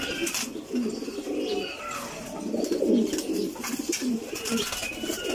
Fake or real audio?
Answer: real